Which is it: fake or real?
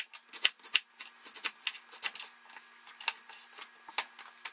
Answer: real